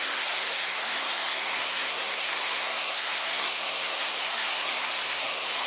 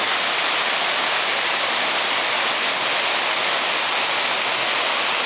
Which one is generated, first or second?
first